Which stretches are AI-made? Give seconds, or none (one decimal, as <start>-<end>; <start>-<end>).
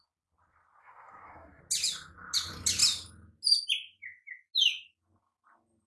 0.8-1.6